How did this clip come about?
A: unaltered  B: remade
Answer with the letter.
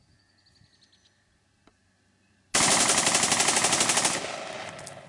A